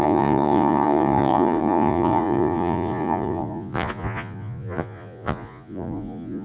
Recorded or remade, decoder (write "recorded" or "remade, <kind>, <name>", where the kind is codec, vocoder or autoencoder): remade, vocoder, Vocos